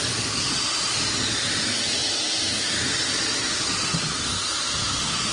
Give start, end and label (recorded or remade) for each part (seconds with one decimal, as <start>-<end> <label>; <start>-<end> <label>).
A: 0.0-5.3 recorded